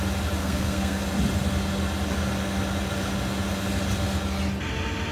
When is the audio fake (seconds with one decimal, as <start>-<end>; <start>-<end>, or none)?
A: 0.4-1.0